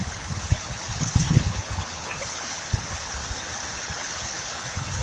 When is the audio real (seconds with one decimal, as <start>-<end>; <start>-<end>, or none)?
3.2-3.8